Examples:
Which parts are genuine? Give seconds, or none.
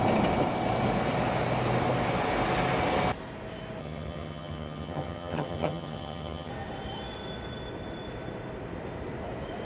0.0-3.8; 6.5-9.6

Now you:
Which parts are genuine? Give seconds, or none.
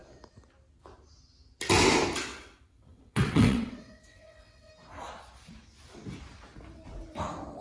0.0-2.3; 4.7-7.6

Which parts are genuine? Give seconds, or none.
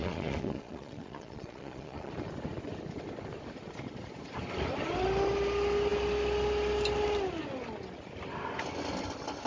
2.1-9.5